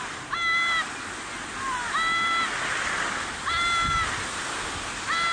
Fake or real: real